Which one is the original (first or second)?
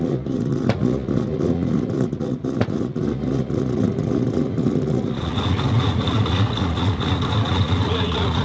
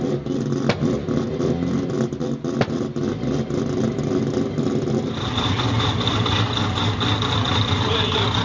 second